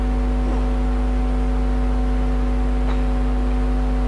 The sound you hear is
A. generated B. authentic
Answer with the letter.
B